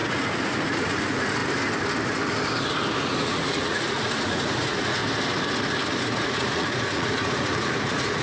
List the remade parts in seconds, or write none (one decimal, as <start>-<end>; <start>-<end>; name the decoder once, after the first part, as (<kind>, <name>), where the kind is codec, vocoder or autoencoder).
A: 0.0-1.4 (vocoder, Vocos); 3.0-5.0; 6.0-8.2